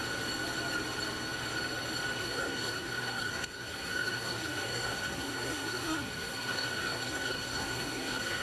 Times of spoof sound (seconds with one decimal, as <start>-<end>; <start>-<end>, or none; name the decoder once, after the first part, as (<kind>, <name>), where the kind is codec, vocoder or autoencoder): 2.2-8.4 (codec, SNAC)